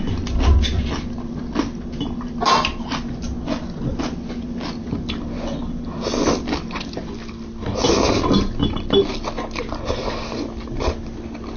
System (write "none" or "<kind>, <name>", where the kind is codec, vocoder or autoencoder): none